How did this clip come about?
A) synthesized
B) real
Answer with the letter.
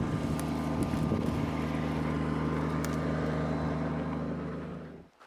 B